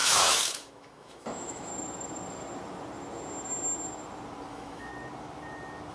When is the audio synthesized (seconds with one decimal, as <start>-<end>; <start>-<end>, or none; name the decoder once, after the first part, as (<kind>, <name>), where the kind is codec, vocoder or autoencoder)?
0.0-1.7 (autoencoder, DAC-VAE); 4.5-4.9